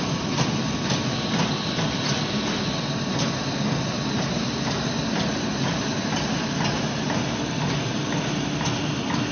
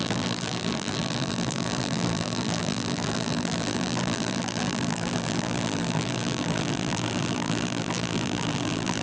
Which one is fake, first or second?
second